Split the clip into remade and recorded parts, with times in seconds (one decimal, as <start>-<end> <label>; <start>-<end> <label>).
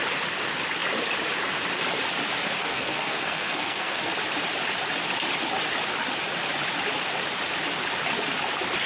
0.0-2.6 recorded; 2.6-4.1 remade; 4.1-8.9 recorded